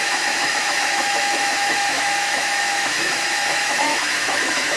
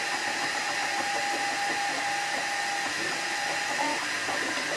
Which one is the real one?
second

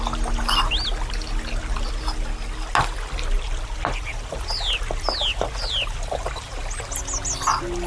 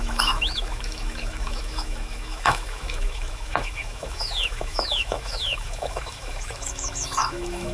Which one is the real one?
first